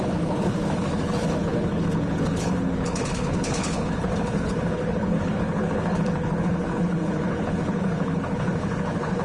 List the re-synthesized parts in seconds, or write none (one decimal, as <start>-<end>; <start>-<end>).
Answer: 0.0-9.2